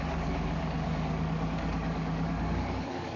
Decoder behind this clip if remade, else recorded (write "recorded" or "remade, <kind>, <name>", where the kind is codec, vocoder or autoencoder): remade, codec, DAC